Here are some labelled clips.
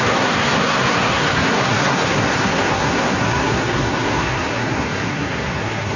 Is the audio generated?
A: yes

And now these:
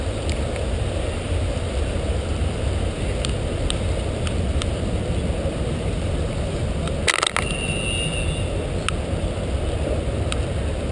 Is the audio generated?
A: no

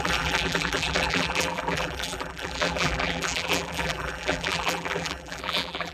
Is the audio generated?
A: yes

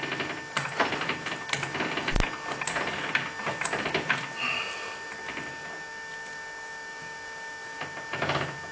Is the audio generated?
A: no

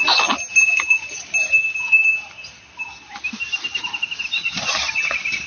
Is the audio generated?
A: no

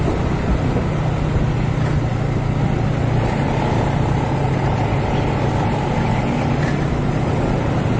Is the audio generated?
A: no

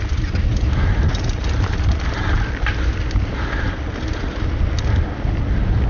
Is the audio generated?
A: no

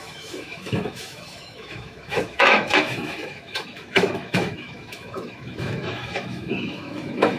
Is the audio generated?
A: yes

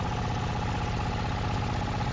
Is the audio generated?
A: no